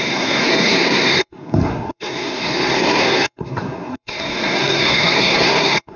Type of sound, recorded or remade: remade